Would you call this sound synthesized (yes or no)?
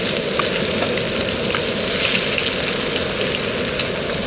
no